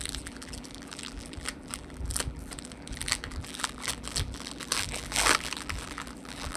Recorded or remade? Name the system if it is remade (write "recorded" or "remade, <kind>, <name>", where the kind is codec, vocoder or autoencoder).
remade, vocoder, BigVGAN v2